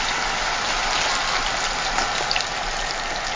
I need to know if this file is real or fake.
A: real